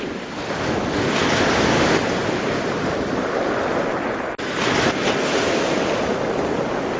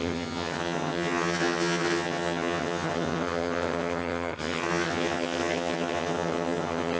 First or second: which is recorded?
first